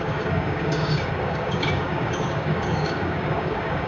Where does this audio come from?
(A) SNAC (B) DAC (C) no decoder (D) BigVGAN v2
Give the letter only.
B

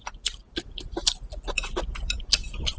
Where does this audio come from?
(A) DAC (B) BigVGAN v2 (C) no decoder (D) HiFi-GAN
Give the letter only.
C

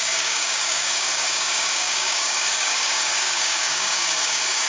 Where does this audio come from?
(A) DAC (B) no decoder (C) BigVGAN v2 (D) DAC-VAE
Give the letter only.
A